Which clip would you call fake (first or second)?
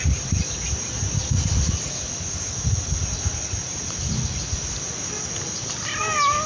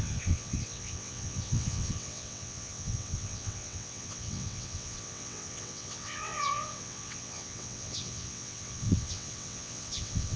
second